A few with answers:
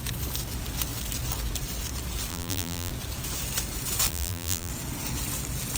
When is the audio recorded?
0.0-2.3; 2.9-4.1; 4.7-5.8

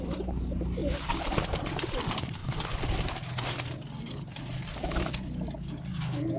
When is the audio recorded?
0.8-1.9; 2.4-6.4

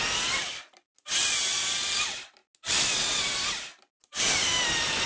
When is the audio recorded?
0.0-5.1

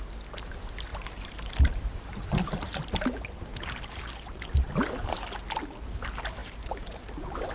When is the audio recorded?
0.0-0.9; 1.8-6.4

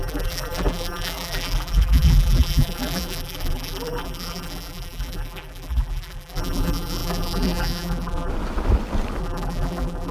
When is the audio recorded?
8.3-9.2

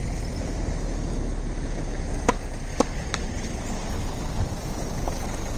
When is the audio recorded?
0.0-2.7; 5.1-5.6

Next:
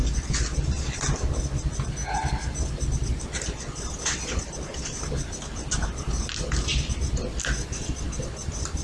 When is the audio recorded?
0.0-8.8